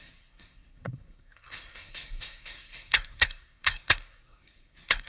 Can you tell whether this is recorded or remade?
remade